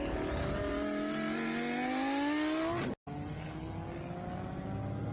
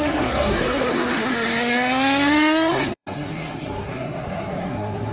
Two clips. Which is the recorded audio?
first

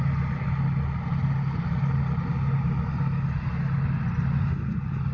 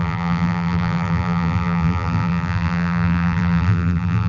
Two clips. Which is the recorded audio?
first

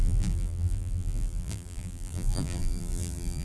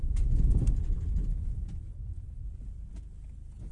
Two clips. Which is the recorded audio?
second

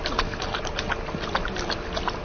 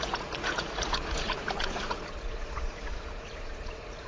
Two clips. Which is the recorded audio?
first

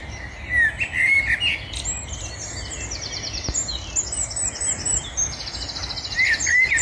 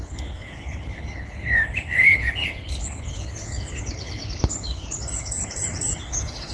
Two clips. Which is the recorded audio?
first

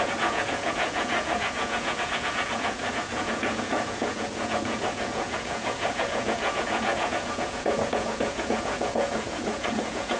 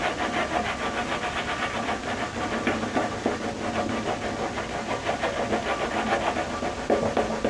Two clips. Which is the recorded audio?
second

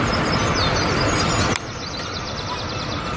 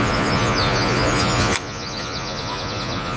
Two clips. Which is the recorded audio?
first